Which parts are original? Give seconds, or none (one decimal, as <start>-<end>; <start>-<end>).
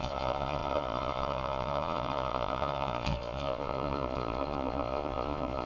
none